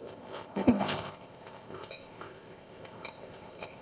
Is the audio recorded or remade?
remade